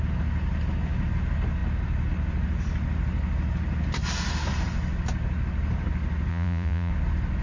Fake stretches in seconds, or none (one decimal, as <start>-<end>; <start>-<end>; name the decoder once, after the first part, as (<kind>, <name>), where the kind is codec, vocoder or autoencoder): 6.3-6.9 (vocoder, Vocos)